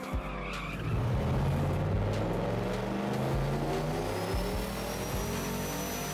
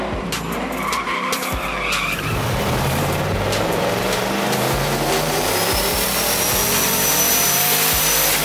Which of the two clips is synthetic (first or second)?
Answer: second